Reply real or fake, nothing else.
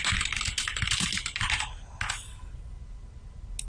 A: real